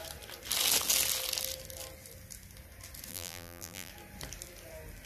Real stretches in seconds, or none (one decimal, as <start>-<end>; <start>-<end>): 0.0-3.1; 3.9-5.1